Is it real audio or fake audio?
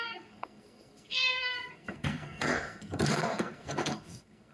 fake